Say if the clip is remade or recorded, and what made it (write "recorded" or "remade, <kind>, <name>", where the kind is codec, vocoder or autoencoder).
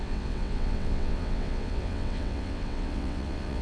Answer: remade, vocoder, WaveNeXt